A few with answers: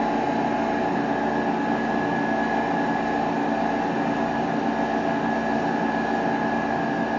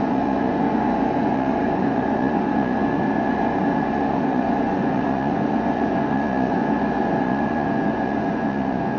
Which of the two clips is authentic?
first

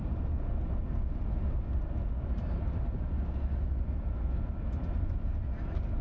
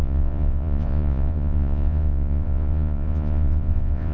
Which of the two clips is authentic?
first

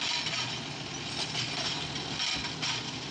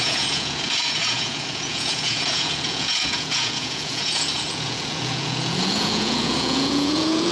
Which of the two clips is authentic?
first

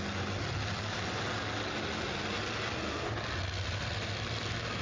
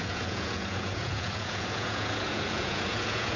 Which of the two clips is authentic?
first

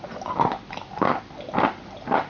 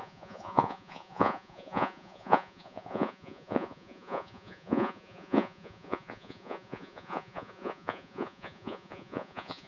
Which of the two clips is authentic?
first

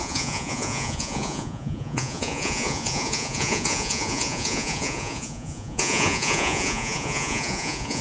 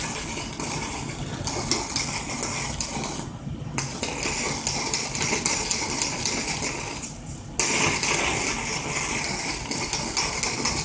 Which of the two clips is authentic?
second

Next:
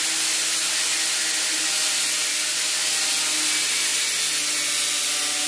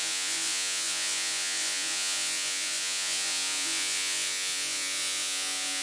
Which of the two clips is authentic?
first